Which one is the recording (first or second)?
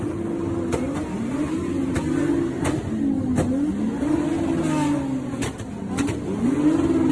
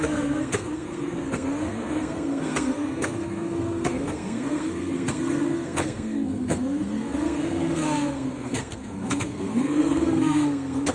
first